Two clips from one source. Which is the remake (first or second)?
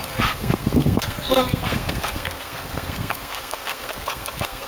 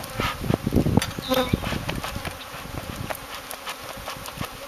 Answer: first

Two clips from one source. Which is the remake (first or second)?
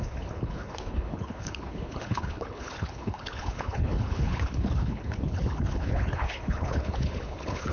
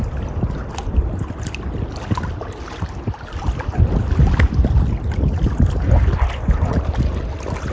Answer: first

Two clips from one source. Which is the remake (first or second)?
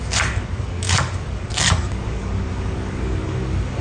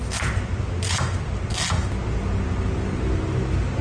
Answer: first